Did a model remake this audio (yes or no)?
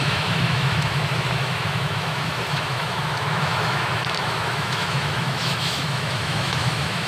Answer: yes